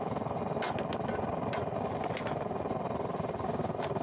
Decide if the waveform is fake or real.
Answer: real